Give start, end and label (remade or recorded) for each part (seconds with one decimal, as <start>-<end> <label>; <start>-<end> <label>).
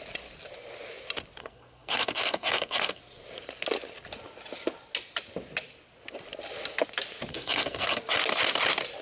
0.0-1.4 recorded; 1.4-3.0 remade; 3.0-7.3 recorded; 7.3-8.0 remade; 8.0-9.0 recorded